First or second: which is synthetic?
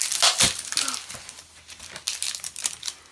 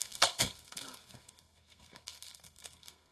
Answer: second